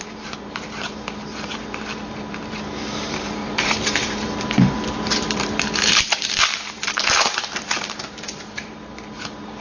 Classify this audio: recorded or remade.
remade